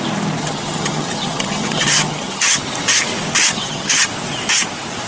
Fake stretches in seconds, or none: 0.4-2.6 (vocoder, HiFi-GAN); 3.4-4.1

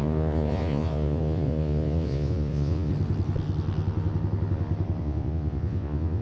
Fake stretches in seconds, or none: 0.0-2.9 (vocoder, Vocos); 5.0-6.2

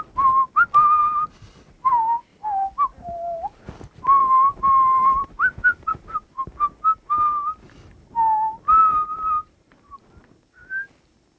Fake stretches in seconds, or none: 4.2-5.9 (vocoder, BigVGAN v2); 8.8-10.0

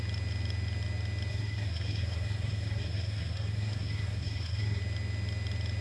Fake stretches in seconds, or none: 1.3-4.8 (codec, SNAC)

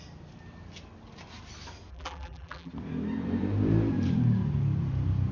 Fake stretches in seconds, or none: 1.9-2.7 (vocoder, BigVGAN v2)

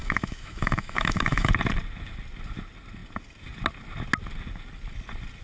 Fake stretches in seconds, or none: 0.0-1.5 (autoencoder, DAC-VAE)

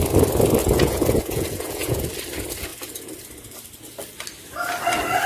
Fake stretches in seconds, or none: 0.6-2.1 (vocoder, Vocos)